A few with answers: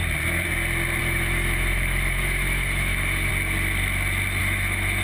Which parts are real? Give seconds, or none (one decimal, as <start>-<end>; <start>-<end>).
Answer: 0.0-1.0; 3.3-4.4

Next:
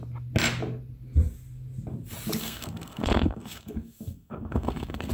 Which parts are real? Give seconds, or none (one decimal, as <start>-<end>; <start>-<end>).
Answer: 0.0-2.4

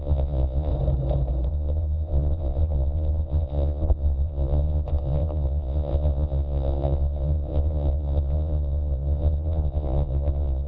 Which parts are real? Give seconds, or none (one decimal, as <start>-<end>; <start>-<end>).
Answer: 0.7-1.5

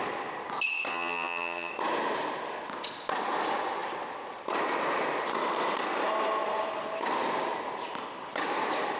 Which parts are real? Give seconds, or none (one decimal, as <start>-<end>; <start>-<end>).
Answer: 0.0-0.9; 1.7-9.0

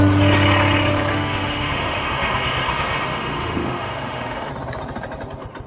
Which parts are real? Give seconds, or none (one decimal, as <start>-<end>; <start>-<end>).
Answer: 0.0-1.1; 4.5-5.7

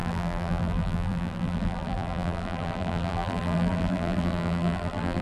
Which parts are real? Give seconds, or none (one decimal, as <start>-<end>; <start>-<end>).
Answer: none

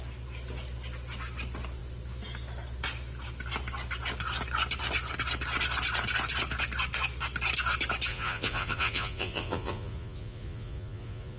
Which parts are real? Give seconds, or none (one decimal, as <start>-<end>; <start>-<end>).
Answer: 0.0-8.1

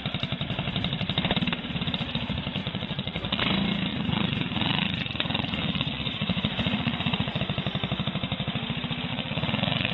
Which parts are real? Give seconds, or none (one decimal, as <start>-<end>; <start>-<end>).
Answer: 0.0-2.6; 3.4-3.9; 7.4-9.1